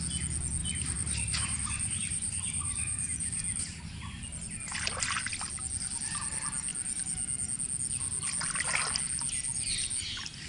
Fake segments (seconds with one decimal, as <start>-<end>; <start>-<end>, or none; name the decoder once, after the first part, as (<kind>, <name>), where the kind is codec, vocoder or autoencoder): 0.6-3.8 (vocoder, BigVGAN v2)